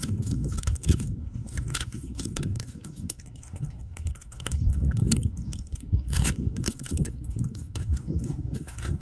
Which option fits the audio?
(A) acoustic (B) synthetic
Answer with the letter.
B